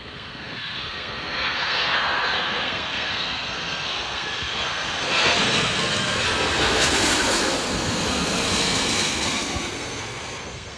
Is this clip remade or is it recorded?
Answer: remade